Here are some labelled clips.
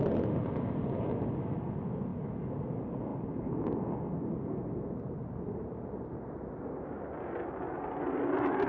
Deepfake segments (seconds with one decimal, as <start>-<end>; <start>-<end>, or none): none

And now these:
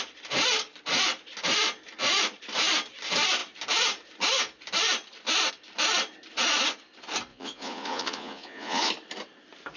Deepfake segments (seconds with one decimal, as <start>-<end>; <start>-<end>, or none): 7.3-8.9

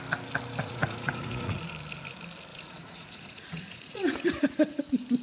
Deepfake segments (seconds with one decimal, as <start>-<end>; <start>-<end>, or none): 0.6-1.6; 2.5-4.8

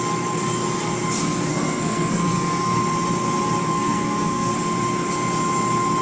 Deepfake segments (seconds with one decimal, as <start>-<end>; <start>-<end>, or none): 1.5-2.8; 3.7-4.5